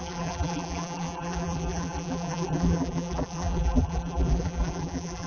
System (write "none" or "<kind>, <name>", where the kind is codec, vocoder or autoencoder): vocoder, BigVGAN v2